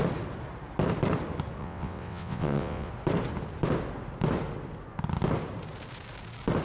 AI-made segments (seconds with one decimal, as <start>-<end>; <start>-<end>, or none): 1.6-2.9